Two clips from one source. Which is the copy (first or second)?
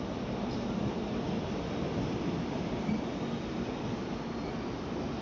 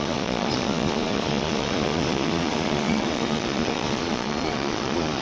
second